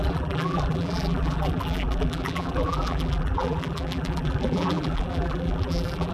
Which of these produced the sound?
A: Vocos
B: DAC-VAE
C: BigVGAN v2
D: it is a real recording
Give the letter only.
C